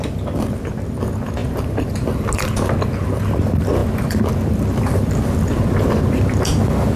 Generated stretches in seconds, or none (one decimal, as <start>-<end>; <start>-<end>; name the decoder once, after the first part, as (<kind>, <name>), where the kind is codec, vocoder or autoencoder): none